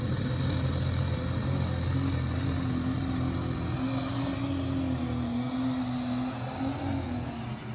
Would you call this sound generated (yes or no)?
no